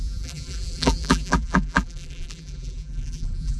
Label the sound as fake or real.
fake